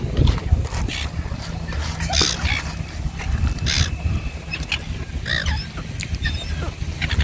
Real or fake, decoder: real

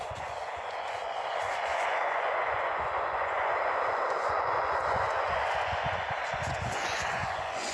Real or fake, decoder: fake, vocoder, Vocos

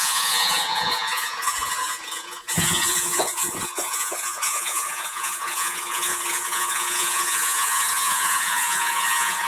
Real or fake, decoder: fake, vocoder, Vocos